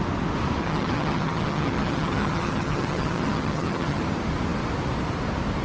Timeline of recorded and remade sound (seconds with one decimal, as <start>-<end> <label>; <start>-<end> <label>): 0.0-0.6 recorded; 0.6-4.0 remade; 4.0-5.6 recorded